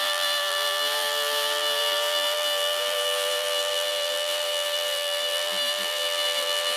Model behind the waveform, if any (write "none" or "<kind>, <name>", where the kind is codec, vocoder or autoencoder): vocoder, BigVGAN v2